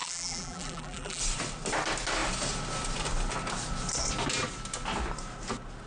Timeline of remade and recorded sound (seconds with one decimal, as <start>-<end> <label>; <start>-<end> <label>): 0.0-1.2 remade; 1.2-5.9 recorded

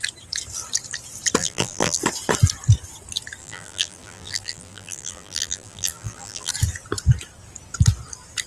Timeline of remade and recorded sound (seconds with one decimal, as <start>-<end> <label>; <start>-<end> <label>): 0.0-1.4 recorded; 1.4-2.0 remade; 2.0-3.4 recorded; 3.4-6.5 remade; 6.5-8.5 recorded

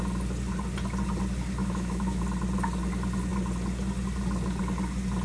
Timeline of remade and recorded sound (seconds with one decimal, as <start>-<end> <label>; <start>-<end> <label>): 0.0-1.6 recorded; 1.6-2.2 remade; 2.2-5.2 recorded